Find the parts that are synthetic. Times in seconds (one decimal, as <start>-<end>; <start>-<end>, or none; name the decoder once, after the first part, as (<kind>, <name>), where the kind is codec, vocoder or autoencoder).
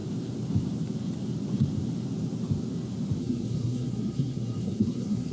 3.2-5.3 (codec, SNAC)